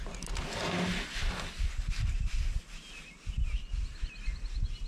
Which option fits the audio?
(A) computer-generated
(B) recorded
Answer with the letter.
B